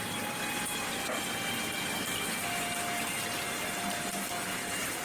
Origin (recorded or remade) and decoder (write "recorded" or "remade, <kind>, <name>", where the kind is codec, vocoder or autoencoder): recorded